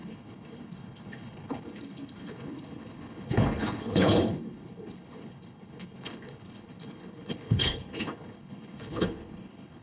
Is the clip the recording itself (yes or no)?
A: no